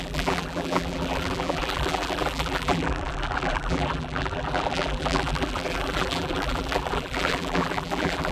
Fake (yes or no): yes